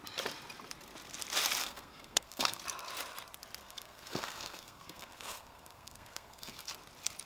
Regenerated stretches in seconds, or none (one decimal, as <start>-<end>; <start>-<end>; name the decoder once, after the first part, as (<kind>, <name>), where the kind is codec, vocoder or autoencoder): 1.6-2.6 (codec, SNAC); 3.6-6.7